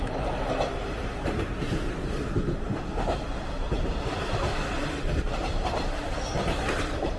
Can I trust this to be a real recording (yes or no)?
no